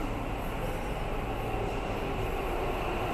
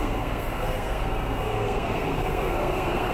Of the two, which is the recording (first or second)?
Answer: first